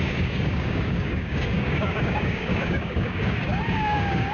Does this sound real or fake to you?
fake